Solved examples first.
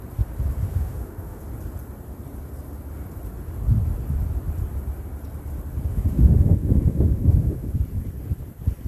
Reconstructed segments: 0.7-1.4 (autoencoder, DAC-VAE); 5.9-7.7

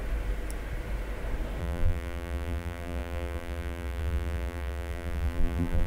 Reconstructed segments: 1.6-5.9 (vocoder, BigVGAN v2)

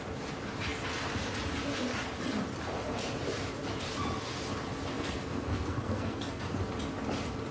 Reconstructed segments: 4.9-6.6 (codec, SNAC)

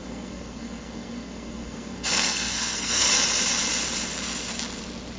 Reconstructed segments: 0.0-3.1 (codec, SNAC)

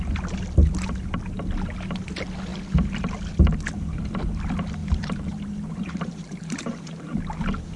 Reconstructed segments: 4.8-7.2 (vocoder, BigVGAN v2)

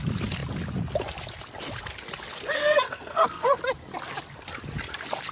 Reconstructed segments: 2.6-3.6 (codec, SNAC)